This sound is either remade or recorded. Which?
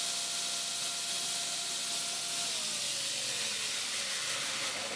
recorded